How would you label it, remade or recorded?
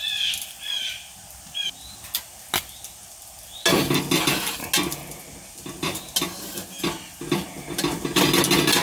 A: recorded